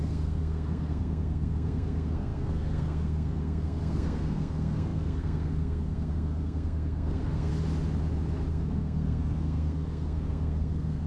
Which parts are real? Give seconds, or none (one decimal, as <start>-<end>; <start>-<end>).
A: 7.5-8.5